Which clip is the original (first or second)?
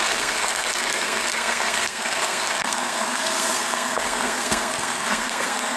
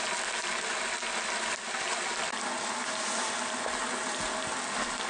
second